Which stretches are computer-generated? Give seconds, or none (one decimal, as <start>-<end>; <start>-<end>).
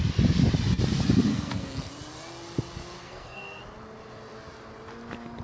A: 1.3-1.9; 3.0-3.6